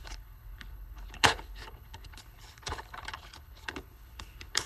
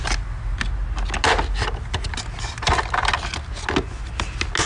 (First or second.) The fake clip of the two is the first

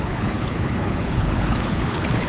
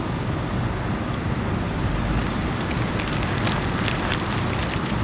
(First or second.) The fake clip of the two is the first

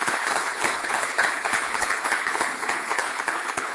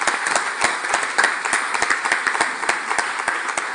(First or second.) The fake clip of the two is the first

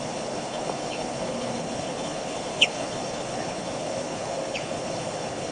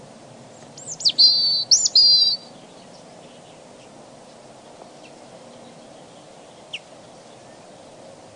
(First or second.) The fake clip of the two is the first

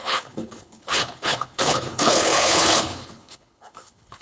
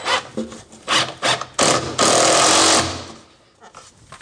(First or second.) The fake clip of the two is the first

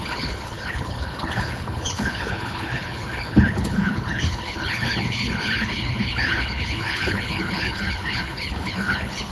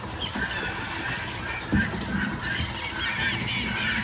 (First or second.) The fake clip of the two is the first